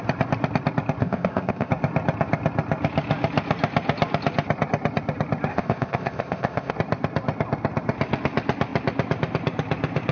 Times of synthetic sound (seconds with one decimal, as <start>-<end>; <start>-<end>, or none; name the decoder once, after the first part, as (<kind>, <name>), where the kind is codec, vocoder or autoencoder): 1.0-1.7 (codec, ZipCodec); 5.5-6.7